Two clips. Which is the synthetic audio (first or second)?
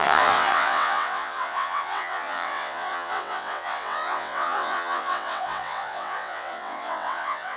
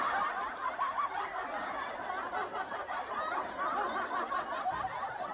first